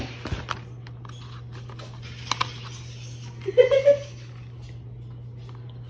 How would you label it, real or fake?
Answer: real